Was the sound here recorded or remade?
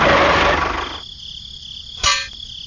recorded